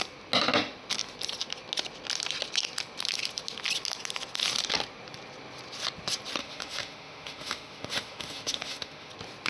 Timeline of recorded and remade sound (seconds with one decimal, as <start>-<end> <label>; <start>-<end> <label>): 0.0-6.4 recorded; 6.4-9.1 remade; 9.1-9.5 recorded